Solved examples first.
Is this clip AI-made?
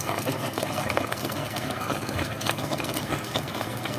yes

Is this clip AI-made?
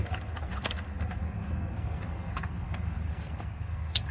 yes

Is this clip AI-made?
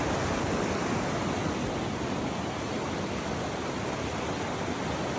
no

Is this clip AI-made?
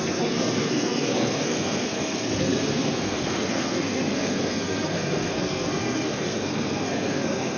yes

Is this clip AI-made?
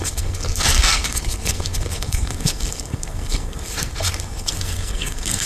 yes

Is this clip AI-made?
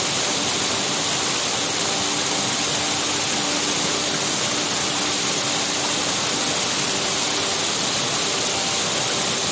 no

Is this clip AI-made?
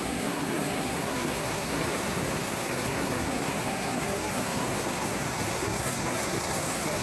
yes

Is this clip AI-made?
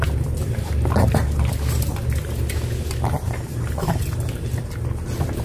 no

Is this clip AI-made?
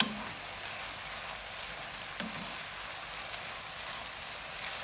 no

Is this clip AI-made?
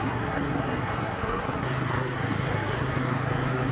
yes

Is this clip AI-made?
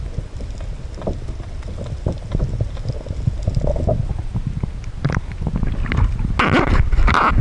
no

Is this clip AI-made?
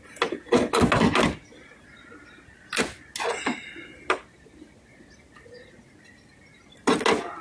no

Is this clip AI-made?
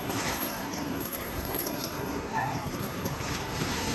yes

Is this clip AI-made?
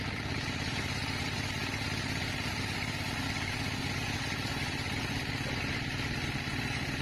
no